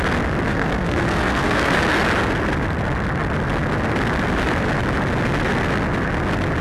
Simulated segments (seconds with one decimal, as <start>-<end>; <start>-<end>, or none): 0.5-1.8